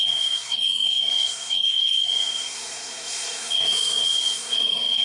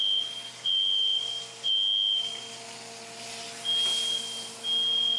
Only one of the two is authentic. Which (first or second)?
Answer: second